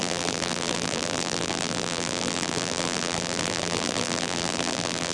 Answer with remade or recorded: remade